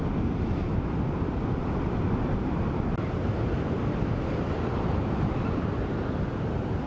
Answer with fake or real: real